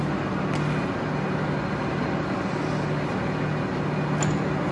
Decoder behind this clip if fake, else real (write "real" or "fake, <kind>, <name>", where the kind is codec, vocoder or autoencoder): real